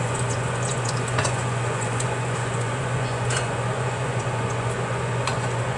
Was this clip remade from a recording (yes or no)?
yes